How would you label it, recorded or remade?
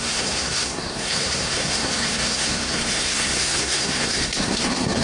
remade